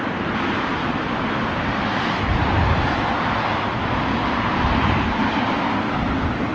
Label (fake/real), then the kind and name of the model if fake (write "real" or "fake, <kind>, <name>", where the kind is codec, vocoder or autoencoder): real